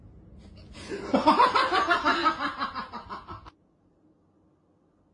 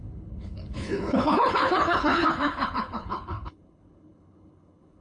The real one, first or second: first